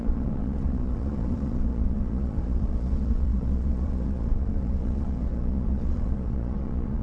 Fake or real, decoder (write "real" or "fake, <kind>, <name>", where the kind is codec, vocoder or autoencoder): fake, vocoder, Vocos